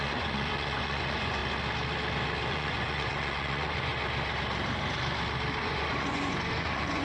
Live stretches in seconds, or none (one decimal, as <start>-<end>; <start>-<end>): 1.4-2.5; 3.9-5.6